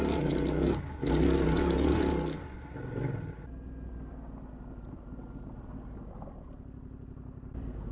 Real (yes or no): yes